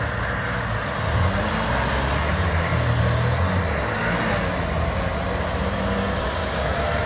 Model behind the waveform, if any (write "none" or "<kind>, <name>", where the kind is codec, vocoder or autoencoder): none